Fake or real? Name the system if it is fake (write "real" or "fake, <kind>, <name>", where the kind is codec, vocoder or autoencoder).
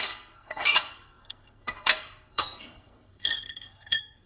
fake, codec, SNAC